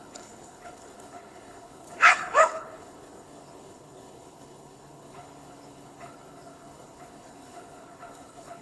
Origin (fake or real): fake